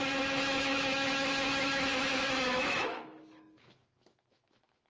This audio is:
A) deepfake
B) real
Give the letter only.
A